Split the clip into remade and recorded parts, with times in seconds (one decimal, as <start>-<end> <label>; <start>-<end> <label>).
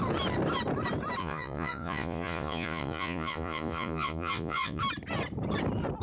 0.0-1.2 recorded; 1.2-4.8 remade; 4.8-6.0 recorded